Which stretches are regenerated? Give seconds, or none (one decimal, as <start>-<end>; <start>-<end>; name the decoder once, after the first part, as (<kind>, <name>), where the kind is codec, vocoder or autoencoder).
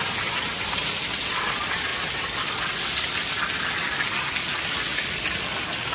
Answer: none